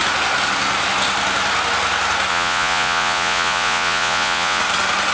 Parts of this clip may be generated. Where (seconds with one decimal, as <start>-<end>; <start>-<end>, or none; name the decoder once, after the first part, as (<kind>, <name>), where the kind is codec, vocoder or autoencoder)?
2.3-4.6 (vocoder, Vocos)